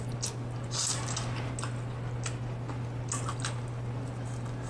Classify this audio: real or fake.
real